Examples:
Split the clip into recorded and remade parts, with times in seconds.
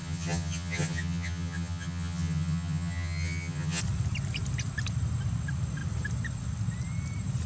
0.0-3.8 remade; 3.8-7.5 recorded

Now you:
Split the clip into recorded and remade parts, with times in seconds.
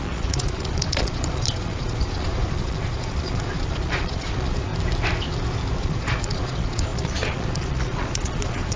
0.0-4.7 remade; 4.7-5.8 recorded; 5.8-8.8 remade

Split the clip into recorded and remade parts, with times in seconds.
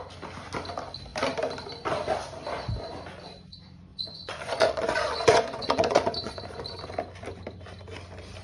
0.0-3.9 recorded; 3.9-6.6 remade; 6.6-8.4 recorded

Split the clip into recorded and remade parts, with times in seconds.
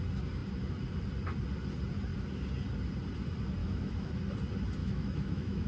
0.0-3.6 recorded; 3.6-4.1 remade; 4.1-4.8 recorded; 4.8-5.7 remade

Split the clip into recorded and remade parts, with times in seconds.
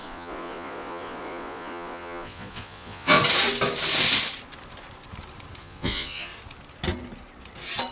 0.0-3.2 remade; 3.2-5.6 recorded; 5.6-6.3 remade; 6.3-7.9 recorded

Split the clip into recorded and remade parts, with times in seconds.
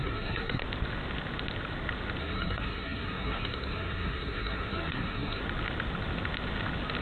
0.0-0.6 remade; 0.6-2.2 recorded; 2.2-5.4 remade; 5.4-7.0 recorded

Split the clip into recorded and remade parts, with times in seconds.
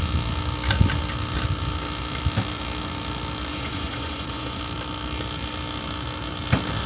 0.0-3.5 recorded; 3.5-4.6 remade; 4.6-6.9 recorded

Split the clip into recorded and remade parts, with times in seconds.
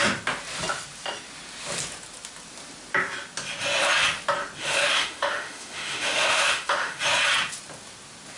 0.0-4.6 recorded; 4.6-7.0 remade; 7.0-8.4 recorded